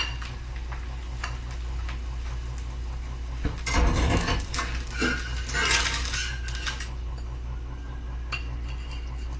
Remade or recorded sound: recorded